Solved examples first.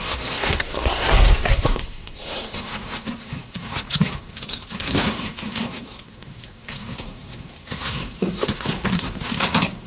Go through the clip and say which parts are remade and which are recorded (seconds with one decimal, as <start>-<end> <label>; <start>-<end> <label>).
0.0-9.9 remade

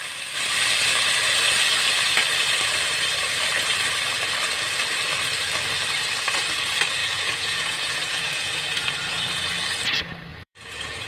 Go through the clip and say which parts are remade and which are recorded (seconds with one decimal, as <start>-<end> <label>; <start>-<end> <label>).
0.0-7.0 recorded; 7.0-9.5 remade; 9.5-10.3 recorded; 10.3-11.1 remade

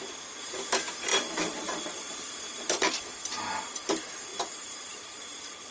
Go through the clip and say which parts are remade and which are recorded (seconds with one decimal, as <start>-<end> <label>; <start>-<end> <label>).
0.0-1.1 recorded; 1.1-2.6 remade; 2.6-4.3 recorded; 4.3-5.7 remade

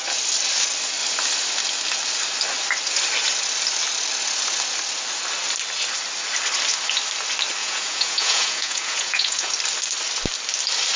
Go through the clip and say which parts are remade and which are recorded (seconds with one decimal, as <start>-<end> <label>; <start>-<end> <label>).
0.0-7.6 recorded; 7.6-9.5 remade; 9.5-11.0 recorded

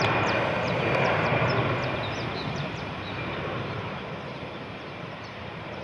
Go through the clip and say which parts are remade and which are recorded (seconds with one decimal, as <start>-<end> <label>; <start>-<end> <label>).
0.0-1.3 remade; 1.3-2.4 recorded; 2.4-5.8 remade

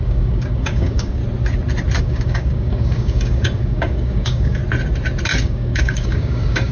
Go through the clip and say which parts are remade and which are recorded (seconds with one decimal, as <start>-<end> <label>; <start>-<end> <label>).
0.0-1.2 remade; 1.2-2.0 recorded; 2.0-4.6 remade; 4.6-5.4 recorded; 5.4-6.7 remade

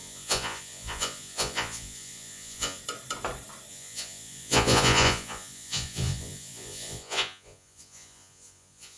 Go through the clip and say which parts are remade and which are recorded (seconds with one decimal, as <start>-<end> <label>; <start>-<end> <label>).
0.0-2.8 remade; 2.8-3.7 recorded; 3.7-9.0 remade